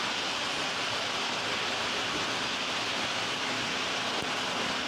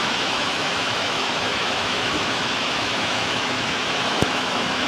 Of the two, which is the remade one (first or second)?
second